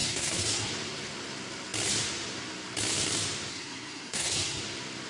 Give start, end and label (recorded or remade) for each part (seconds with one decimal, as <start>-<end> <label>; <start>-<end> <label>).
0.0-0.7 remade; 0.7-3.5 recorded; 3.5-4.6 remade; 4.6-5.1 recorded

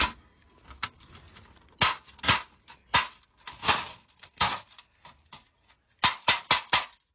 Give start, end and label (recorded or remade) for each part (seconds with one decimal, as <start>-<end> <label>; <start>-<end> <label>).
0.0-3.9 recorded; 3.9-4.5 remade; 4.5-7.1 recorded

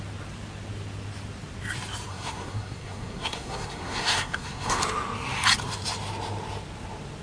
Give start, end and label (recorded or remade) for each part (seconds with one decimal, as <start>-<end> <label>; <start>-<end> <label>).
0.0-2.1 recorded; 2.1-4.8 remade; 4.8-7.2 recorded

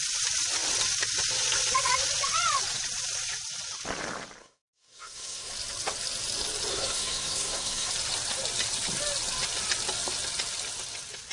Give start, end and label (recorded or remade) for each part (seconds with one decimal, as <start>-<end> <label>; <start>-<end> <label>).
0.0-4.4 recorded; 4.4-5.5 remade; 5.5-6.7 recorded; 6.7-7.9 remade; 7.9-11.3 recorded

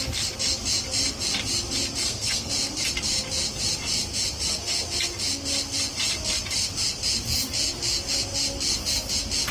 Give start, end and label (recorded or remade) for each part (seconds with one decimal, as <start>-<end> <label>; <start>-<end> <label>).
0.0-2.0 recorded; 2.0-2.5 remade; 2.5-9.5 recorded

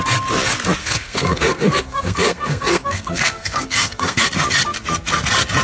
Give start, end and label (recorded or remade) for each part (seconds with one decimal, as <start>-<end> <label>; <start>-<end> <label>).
0.0-0.8 recorded; 0.8-4.2 remade; 4.2-5.6 recorded

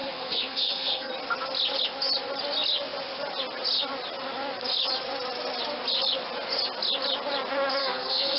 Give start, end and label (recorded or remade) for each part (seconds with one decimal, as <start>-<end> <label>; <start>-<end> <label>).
0.0-1.1 remade; 1.1-7.8 recorded; 7.8-8.4 remade